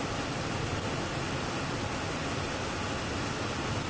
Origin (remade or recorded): recorded